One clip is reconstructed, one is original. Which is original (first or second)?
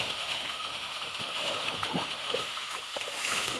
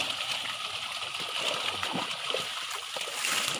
second